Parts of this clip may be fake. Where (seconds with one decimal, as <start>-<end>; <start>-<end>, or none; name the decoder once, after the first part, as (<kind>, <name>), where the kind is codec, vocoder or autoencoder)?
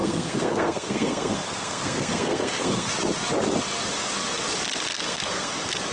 0.0-2.9 (codec, SNAC); 4.9-5.5